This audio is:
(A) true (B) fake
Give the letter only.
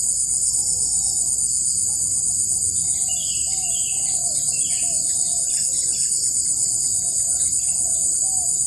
A